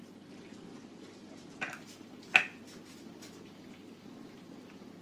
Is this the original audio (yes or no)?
yes